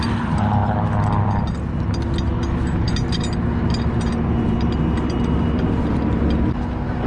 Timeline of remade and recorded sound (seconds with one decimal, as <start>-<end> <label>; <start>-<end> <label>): 0.0-7.1 recorded